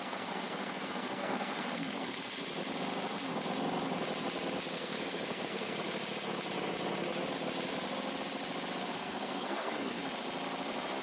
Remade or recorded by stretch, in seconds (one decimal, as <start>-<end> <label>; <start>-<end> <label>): 0.0-2.2 remade; 2.2-4.7 recorded; 4.7-6.0 remade; 6.0-8.8 recorded; 8.8-10.0 remade; 10.0-11.0 recorded